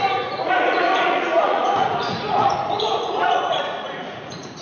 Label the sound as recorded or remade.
remade